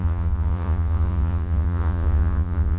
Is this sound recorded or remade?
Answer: remade